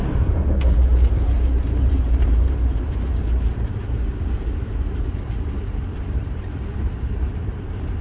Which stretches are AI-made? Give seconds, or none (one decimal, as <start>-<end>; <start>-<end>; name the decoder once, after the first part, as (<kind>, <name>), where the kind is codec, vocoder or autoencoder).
0.0-8.0 (vocoder, BigVGAN v2)